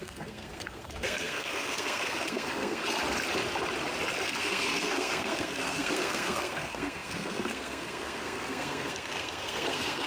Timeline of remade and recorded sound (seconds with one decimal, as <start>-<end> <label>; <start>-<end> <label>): 0.0-2.8 remade; 2.8-4.2 recorded; 4.2-10.1 remade